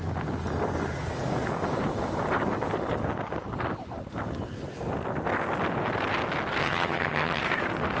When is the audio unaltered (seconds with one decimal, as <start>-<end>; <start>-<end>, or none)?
0.0-6.6; 7.4-8.0